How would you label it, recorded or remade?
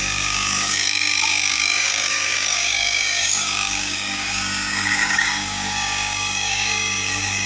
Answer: remade